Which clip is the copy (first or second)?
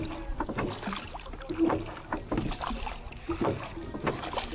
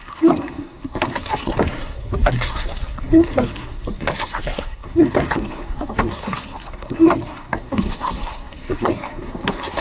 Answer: second